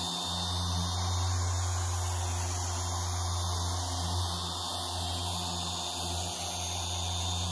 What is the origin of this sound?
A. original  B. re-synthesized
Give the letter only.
A